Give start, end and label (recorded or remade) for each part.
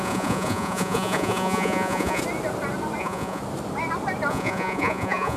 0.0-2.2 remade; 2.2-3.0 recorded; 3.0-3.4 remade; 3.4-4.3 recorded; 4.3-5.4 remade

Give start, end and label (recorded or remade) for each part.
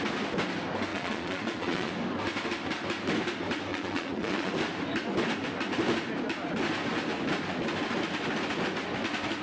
0.0-0.9 recorded; 0.9-1.9 remade; 1.9-3.7 recorded; 3.7-4.5 remade; 4.5-9.4 recorded